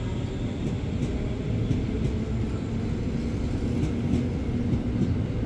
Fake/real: real